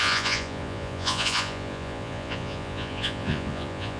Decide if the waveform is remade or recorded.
remade